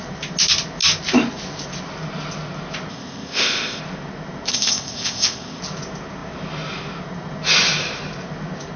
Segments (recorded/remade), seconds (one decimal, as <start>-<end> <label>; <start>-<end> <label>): 0.0-2.9 recorded; 2.9-3.8 remade; 3.8-4.5 recorded; 4.5-5.6 remade; 5.6-8.8 recorded